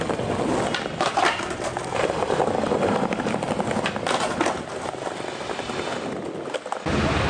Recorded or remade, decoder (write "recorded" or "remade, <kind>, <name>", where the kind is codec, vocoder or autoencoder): recorded